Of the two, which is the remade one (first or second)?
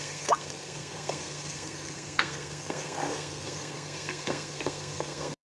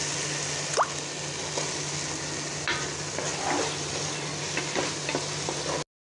first